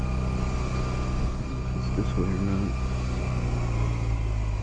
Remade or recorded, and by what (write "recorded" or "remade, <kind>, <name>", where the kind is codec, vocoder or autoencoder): recorded